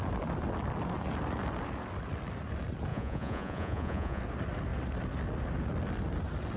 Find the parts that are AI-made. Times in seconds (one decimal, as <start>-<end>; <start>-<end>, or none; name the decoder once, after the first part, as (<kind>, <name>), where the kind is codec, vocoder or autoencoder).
2.9-4.2 (vocoder, Vocos)